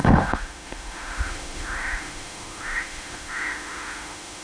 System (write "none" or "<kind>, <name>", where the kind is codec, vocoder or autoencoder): autoencoder, DAC-VAE